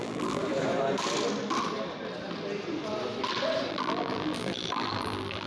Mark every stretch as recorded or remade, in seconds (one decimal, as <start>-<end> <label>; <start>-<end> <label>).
0.0-0.4 remade; 0.4-3.7 recorded; 3.7-5.5 remade